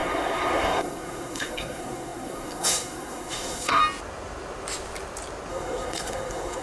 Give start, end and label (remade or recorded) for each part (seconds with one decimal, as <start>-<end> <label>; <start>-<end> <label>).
0.0-3.8 remade; 3.8-5.5 recorded; 5.5-6.6 remade